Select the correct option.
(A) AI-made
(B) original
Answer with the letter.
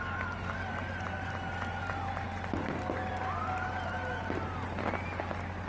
B